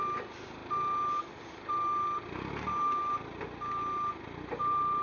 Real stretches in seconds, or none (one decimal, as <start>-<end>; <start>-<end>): 0.0-5.0